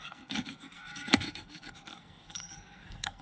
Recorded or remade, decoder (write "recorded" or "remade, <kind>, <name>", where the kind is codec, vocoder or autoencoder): remade, codec, SNAC